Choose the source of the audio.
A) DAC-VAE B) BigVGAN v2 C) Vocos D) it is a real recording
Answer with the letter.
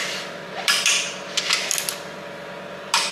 B